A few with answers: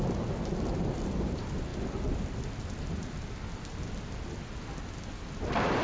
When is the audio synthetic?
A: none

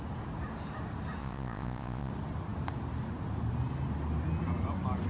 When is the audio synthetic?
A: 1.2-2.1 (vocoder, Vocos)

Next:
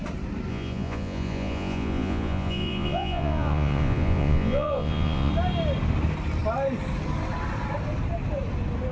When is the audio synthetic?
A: 0.5-5.3 (vocoder, Vocos)

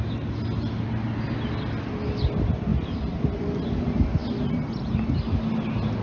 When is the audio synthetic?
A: none

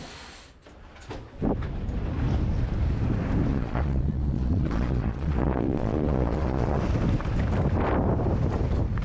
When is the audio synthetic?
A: 3.5-6.8 (vocoder, Vocos)

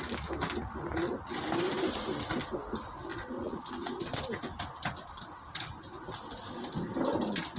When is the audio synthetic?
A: 3.1-4.2 (vocoder, Vocos)